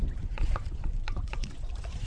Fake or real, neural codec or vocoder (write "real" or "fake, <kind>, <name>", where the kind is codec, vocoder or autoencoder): fake, vocoder, Vocos